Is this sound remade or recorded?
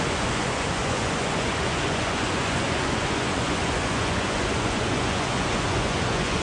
remade